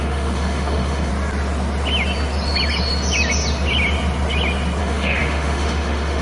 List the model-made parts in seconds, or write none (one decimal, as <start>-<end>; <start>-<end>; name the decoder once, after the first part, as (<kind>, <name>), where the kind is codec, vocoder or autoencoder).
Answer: 0.0-1.1 (autoencoder, DAC-VAE); 4.8-6.2